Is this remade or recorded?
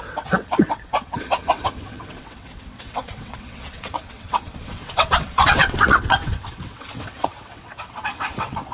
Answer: remade